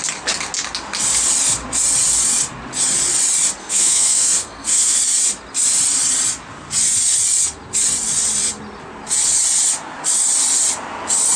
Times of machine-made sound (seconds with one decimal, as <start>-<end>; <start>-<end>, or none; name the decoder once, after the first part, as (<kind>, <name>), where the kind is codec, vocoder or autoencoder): 3.6-5.0 (codec, SNAC)